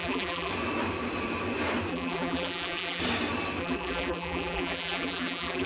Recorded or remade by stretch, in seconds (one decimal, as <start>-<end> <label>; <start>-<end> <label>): 0.0-0.5 remade; 0.5-1.9 recorded; 1.9-3.0 remade; 3.0-3.6 recorded; 3.6-5.7 remade